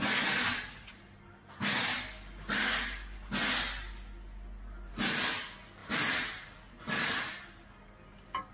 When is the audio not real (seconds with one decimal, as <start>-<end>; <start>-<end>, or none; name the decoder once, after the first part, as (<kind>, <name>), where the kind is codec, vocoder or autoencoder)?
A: none

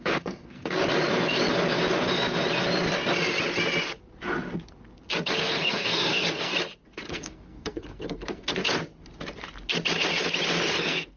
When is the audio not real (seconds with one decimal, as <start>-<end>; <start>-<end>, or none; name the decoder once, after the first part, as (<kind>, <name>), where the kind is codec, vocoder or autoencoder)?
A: 0.0-0.8 (codec, SNAC); 5.4-6.5; 7.1-8.6; 10.7-11.2

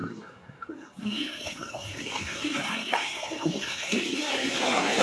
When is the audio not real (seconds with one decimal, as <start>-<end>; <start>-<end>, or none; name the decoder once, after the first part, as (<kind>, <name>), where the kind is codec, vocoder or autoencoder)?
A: 0.0-5.0 (codec, SNAC)